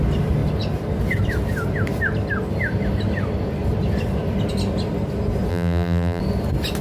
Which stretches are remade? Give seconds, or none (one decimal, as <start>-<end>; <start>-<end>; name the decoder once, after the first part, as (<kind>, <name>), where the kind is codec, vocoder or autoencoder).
5.5-6.2 (vocoder, BigVGAN v2)